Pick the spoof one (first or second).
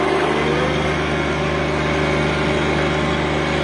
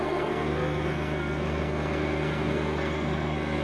second